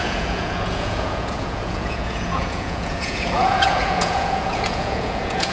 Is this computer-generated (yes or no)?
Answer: yes